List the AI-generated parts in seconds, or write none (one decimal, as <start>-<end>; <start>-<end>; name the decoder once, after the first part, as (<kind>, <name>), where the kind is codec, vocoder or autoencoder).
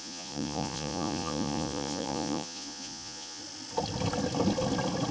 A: 0.0-3.4 (vocoder, Vocos)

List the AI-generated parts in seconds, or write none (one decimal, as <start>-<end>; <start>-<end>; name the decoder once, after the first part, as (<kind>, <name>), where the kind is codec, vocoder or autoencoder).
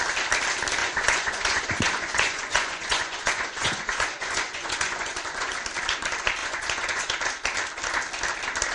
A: 0.8-5.5 (vocoder, Vocos); 6.4-7.1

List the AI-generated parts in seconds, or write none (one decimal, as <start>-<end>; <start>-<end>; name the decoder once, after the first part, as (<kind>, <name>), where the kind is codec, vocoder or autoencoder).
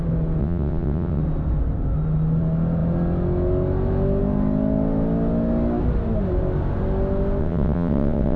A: 0.4-1.2 (vocoder, WaveNeXt); 7.4-8.4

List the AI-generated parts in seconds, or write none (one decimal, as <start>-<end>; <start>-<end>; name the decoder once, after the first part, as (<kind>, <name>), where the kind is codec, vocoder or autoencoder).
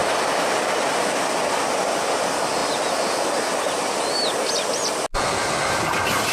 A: none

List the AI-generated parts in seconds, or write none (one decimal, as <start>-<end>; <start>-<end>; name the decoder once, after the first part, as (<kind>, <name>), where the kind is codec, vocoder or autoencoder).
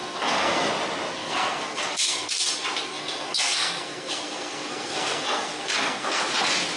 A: 0.0-0.7 (codec, SNAC); 1.2-2.5; 2.9-6.2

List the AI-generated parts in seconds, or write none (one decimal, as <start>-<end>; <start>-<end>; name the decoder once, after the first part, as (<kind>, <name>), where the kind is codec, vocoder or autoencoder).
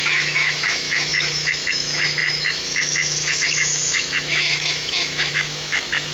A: 0.0-6.1 (autoencoder, DAC-VAE)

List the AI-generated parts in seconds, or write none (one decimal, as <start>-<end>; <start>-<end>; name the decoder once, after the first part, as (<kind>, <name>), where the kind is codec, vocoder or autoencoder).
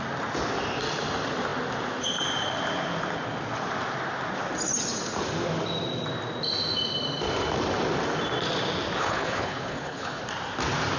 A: 9.0-10.2 (codec, HILCodec)